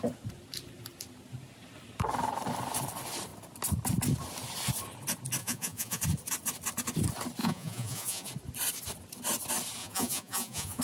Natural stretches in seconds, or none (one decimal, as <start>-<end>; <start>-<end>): 0.0-5.4; 6.0-7.4; 8.3-9.8